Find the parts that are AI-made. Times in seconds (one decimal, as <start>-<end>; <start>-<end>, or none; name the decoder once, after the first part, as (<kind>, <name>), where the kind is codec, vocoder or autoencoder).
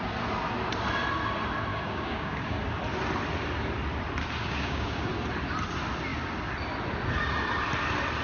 1.7-2.6 (codec, DAC); 4.4-5.1